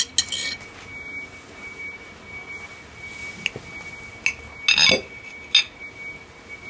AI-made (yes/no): no